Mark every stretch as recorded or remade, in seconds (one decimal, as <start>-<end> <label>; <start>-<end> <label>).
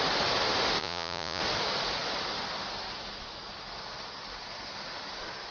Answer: 0.0-0.8 recorded; 0.8-1.4 remade; 1.4-5.5 recorded